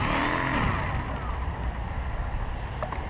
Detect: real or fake real